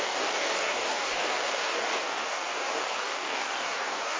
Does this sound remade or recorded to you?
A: remade